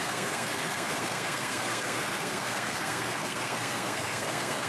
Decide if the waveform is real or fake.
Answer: fake